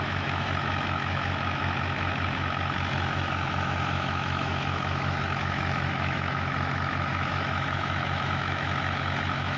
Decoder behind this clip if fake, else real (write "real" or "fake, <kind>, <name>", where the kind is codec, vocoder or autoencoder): fake, autoencoder, DAC-VAE